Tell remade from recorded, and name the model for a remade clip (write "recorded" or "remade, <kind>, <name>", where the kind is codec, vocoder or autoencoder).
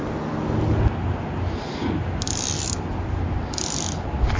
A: recorded